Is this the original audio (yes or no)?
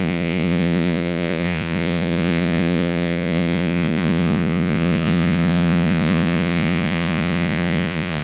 no